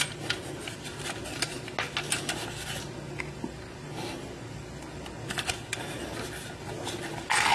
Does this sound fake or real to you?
real